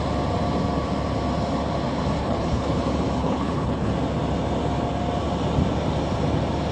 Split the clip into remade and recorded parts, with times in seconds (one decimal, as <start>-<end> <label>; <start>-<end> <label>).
0.0-2.2 recorded; 2.2-2.8 remade; 2.8-3.2 recorded; 3.2-3.9 remade; 3.9-6.7 recorded